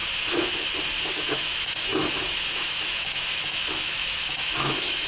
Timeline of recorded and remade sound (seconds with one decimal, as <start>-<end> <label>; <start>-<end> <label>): 0.0-1.0 recorded; 1.0-5.1 remade

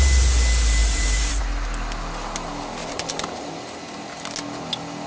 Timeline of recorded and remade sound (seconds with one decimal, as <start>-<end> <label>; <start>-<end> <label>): 0.0-0.8 recorded; 0.8-1.4 remade; 1.4-2.8 recorded; 2.8-3.5 remade; 3.5-5.1 recorded

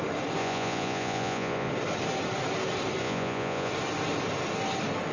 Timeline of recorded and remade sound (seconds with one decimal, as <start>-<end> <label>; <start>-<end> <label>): 0.0-0.4 recorded; 0.4-1.7 remade; 1.7-3.0 recorded; 3.0-3.7 remade; 3.7-5.1 recorded

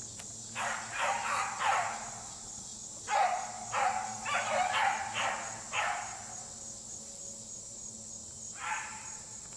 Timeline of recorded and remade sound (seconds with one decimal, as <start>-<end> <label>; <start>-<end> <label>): 0.0-9.6 recorded

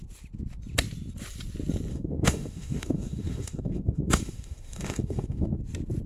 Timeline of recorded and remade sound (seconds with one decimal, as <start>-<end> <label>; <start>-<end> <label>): 0.0-1.9 recorded; 1.9-5.6 remade; 5.6-6.1 recorded

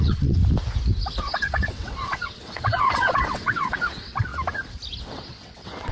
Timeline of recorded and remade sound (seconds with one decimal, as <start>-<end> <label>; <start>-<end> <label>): 0.0-0.4 remade; 0.4-1.2 recorded; 1.2-4.3 remade; 4.3-5.0 recorded; 5.0-5.9 remade

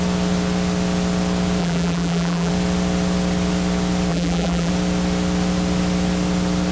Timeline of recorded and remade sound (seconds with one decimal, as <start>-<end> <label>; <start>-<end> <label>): 0.0-1.6 recorded; 1.6-2.5 remade; 2.5-4.1 recorded; 4.1-4.7 remade; 4.7-6.7 recorded

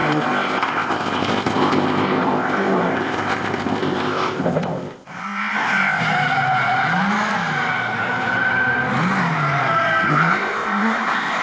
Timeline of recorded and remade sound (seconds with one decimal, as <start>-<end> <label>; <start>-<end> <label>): 0.0-6.0 remade; 6.0-10.1 recorded; 10.1-11.4 remade